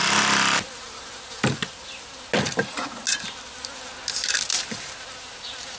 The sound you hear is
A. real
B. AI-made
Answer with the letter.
A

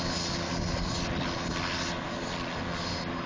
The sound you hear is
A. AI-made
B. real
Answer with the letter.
B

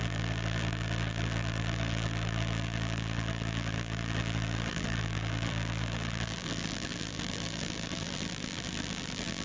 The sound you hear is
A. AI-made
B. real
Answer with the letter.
A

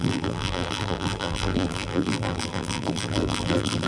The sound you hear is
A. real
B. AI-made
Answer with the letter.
B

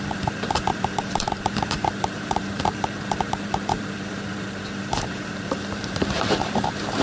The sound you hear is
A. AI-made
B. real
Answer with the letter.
A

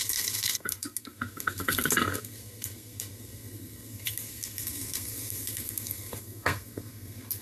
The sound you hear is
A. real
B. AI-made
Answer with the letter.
B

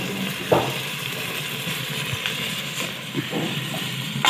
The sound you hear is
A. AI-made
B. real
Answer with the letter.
A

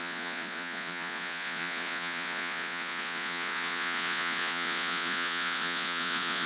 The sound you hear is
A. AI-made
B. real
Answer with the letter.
A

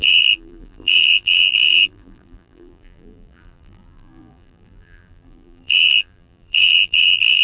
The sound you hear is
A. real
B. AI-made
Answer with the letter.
B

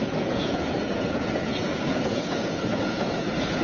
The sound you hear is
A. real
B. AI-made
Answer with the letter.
B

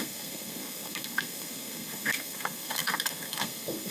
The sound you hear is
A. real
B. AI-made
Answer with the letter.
B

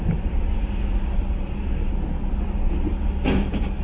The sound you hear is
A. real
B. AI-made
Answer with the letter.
A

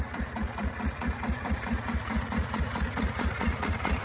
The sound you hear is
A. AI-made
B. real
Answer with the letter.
A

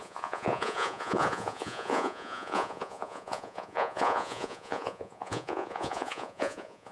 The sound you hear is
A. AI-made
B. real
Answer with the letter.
A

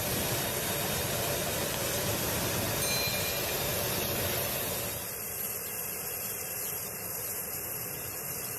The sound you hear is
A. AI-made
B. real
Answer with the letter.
A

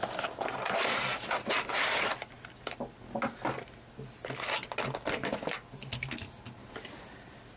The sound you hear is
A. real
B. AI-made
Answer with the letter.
A